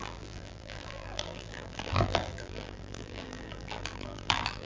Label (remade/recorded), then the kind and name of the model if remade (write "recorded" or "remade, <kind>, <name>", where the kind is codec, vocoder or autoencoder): remade, vocoder, BigVGAN v2